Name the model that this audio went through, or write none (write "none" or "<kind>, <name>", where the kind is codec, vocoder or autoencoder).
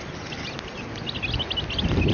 none